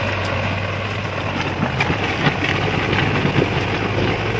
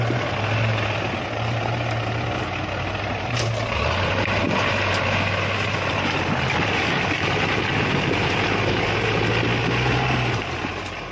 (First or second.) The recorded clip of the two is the first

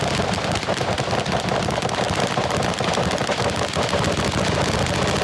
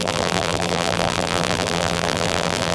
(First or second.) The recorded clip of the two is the first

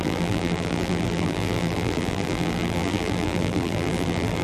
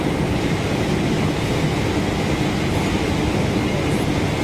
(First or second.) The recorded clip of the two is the second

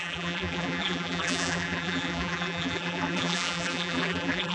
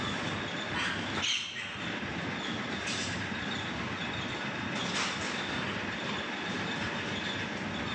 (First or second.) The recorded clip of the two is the second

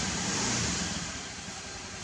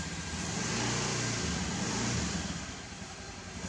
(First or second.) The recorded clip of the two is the second